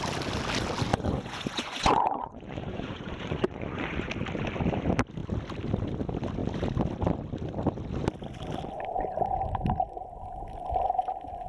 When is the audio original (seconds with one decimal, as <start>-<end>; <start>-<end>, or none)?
0.0-0.9; 4.1-11.5